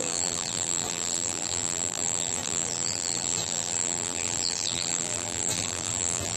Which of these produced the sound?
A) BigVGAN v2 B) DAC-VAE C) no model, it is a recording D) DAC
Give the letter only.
A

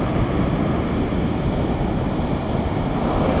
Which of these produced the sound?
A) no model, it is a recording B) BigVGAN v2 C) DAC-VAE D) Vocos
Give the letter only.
A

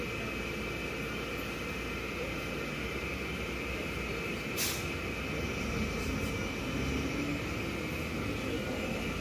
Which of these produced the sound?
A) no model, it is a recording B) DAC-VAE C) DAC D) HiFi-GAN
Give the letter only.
A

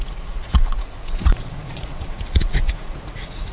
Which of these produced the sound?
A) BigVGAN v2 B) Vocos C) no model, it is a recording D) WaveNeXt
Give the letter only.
B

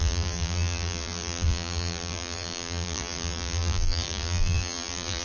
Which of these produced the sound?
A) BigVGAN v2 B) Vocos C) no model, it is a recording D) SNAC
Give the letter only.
A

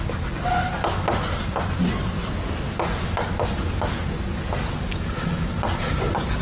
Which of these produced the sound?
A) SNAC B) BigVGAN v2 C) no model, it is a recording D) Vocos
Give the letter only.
C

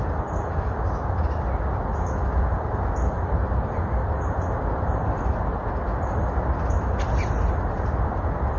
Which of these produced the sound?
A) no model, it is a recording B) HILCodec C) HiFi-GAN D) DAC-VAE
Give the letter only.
A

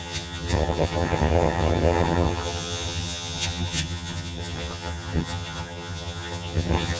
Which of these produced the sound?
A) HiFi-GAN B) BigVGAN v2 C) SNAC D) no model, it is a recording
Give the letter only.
A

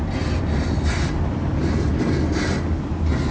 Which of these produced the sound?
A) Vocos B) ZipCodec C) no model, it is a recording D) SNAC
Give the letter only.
C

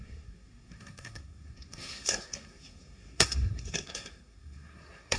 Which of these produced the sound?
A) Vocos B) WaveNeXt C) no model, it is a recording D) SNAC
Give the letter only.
D